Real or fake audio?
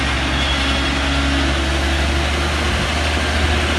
real